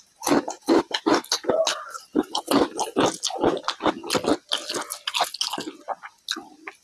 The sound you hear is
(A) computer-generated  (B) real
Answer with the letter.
B